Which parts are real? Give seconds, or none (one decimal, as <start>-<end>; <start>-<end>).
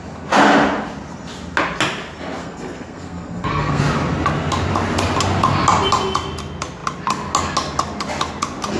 0.0-2.4; 3.8-8.8